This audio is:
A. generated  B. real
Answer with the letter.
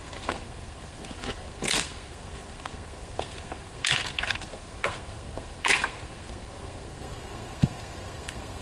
A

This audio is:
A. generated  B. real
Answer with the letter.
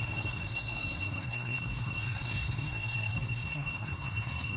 A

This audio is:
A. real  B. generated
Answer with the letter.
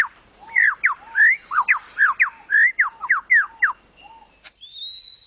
A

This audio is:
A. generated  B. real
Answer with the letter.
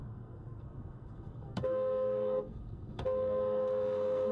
A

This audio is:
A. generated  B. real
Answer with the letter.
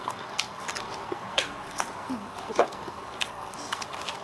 A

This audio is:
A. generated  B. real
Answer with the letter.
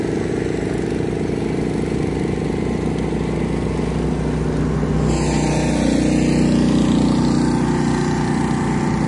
B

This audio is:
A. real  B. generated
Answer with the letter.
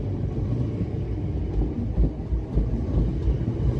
A